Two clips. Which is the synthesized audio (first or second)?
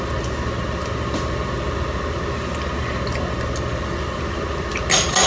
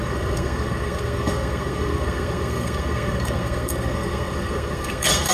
second